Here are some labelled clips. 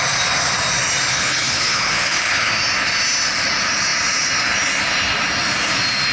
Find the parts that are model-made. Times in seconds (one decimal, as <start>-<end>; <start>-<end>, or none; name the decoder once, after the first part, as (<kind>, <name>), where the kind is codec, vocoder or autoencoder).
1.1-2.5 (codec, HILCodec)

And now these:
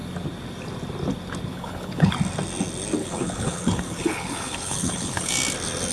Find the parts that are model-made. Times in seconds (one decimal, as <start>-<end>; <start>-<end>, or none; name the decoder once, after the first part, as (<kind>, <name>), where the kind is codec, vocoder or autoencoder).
1.5-2.1 (codec, HILCodec); 3.0-5.3

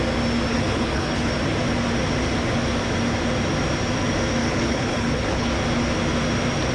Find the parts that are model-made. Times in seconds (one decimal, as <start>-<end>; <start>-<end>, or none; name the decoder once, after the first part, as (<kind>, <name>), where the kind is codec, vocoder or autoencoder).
0.5-1.3 (codec, HILCodec); 4.4-5.5

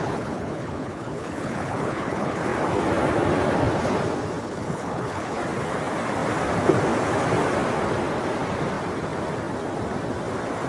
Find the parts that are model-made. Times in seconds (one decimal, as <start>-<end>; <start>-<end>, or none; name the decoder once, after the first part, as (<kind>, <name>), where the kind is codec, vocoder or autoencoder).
0.0-2.4 (codec, HILCodec); 4.4-5.4

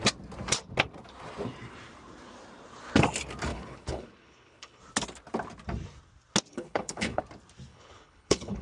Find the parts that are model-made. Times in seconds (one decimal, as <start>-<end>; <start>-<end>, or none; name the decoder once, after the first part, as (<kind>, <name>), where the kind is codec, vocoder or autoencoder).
3.5-4.8 (codec, HILCodec); 6.5-7.2; 7.7-8.6

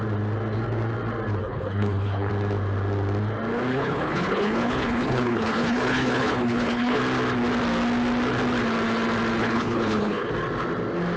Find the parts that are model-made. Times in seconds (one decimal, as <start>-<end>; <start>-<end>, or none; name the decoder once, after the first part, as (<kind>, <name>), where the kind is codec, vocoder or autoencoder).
1.4-2.3 (codec, HILCodec); 3.7-7.0; 9.4-10.3